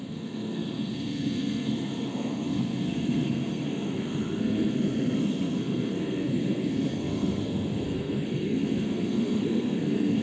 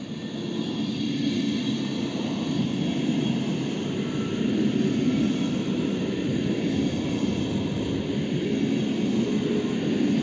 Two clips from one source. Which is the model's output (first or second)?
first